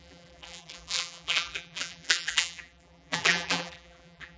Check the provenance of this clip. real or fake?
fake